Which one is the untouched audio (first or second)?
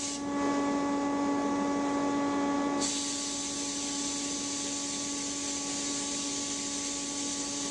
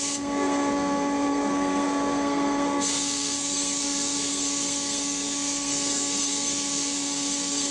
first